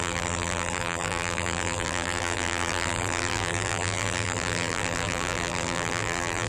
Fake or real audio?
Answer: fake